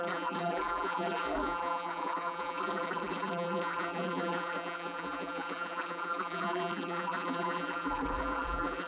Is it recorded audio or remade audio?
remade